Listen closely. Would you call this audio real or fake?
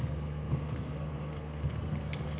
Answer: fake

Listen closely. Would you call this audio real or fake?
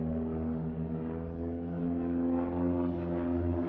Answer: fake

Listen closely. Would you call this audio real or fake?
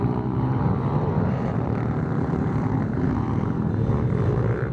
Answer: fake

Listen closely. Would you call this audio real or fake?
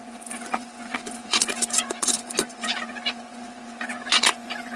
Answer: fake